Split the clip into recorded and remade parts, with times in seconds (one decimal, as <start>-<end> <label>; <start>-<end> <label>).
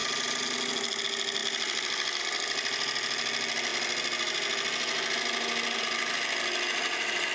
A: 0.0-7.3 recorded